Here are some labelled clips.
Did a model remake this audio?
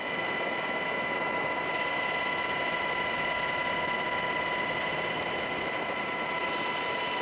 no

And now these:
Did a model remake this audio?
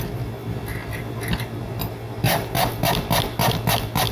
no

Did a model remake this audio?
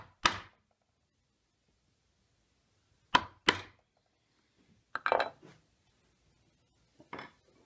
no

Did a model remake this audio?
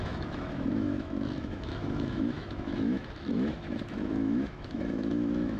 yes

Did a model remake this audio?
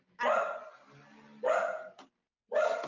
no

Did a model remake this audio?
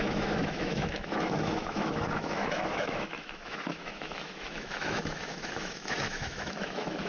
yes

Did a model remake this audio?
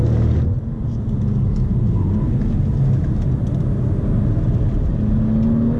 no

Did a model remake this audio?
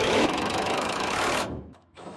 yes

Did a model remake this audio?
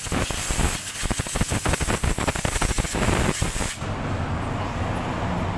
no